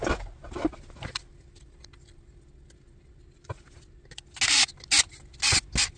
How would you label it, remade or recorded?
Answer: recorded